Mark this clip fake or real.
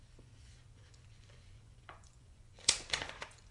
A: fake